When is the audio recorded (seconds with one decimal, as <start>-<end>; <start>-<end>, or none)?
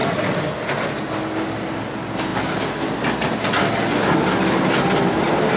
0.0-5.6